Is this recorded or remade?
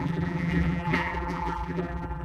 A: remade